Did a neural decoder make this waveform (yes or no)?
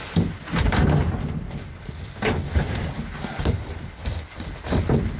no